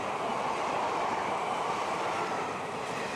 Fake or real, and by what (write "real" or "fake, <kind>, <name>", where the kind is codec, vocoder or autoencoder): fake, vocoder, BigVGAN v2